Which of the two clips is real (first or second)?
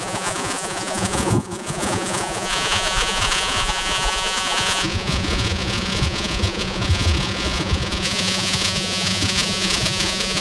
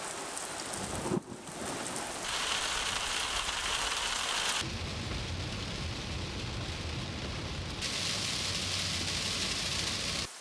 second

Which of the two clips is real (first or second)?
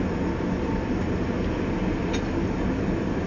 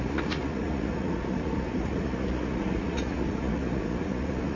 first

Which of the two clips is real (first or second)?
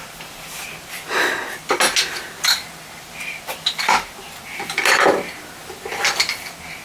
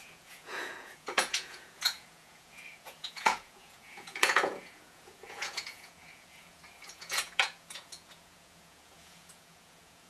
first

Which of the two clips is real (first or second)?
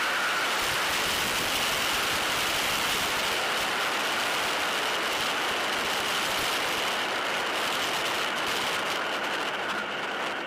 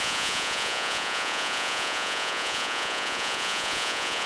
first